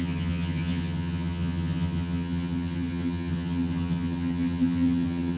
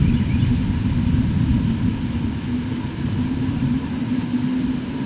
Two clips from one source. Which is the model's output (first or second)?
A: first